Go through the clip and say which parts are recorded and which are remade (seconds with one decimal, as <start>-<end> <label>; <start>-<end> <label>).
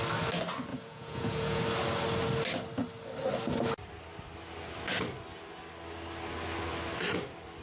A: 0.0-0.7 recorded; 0.7-1.6 remade; 1.6-7.6 recorded